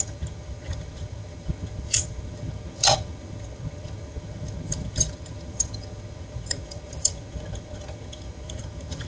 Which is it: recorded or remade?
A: remade